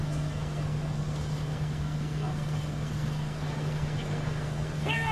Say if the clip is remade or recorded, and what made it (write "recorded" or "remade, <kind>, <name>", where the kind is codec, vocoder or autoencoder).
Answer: remade, codec, SNAC